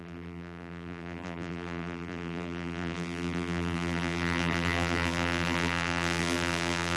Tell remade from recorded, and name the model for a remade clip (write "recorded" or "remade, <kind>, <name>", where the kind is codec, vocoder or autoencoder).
remade, vocoder, BigVGAN v2